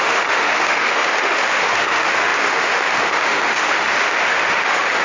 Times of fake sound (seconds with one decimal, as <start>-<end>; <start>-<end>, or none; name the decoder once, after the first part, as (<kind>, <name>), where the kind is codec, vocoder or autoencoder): 0.0-5.0 (autoencoder, DAC-VAE)